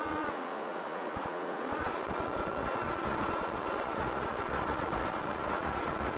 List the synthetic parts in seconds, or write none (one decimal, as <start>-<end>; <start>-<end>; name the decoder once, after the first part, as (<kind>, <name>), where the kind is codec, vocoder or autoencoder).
0.0-6.2 (vocoder, Vocos)